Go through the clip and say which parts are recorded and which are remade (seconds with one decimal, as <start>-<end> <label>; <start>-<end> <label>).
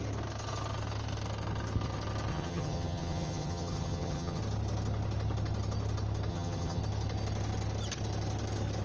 0.0-2.3 recorded; 2.3-4.4 remade; 4.4-6.3 recorded; 6.3-6.8 remade; 6.8-8.8 recorded